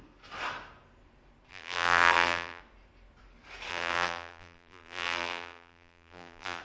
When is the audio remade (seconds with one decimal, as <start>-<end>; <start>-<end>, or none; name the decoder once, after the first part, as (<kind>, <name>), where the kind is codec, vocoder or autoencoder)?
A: 1.5-2.6 (vocoder, BigVGAN v2); 3.7-6.6